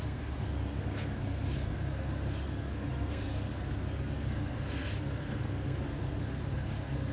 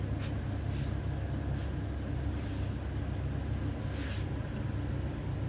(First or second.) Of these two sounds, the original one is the second